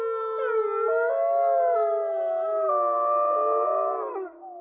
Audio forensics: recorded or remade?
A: recorded